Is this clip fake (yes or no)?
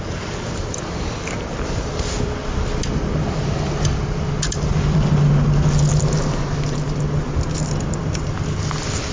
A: no